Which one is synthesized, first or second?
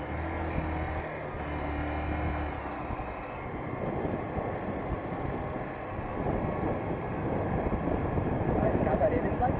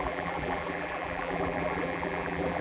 second